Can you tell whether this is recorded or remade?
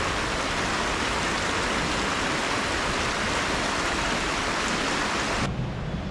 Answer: recorded